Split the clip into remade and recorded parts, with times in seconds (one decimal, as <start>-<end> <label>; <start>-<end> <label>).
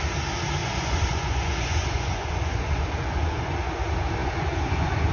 0.0-0.6 recorded; 0.6-3.7 remade; 3.7-4.2 recorded; 4.2-5.1 remade